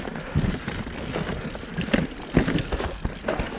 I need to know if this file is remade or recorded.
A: recorded